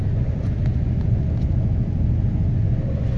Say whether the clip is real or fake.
fake